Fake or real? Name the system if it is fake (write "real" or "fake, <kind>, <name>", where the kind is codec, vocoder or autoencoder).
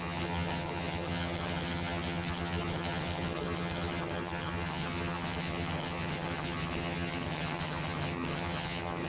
fake, vocoder, HiFi-GAN